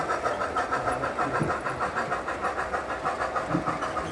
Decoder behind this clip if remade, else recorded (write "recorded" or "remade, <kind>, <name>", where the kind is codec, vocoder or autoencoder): recorded